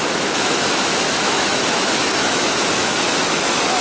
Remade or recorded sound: remade